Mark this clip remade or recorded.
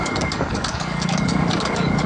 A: remade